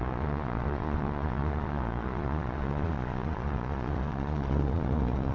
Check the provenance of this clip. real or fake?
fake